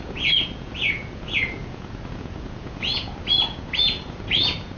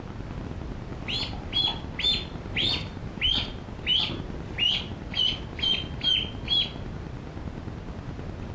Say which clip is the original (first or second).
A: second